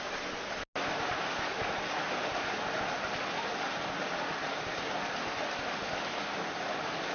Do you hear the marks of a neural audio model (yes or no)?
no